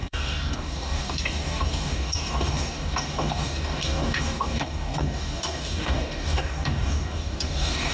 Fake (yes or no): yes